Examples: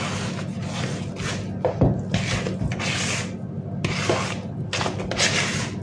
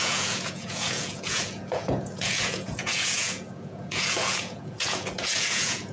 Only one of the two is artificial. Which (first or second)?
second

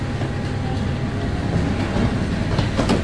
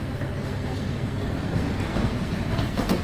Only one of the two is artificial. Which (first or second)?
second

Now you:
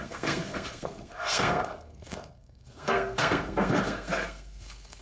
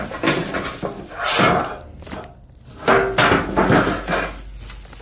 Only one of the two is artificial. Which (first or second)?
first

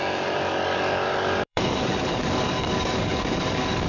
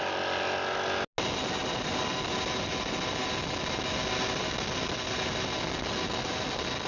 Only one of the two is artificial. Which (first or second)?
first